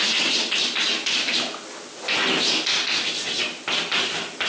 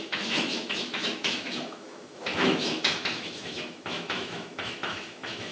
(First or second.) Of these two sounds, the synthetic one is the second